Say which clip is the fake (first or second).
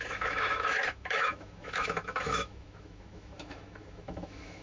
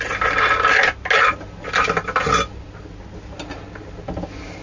first